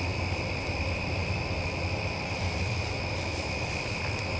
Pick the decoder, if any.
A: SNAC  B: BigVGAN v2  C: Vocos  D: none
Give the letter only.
D